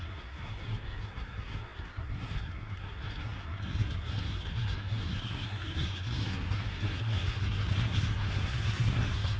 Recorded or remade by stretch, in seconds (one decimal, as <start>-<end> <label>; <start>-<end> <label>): 0.0-9.4 remade